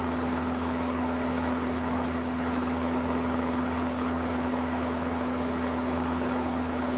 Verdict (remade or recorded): remade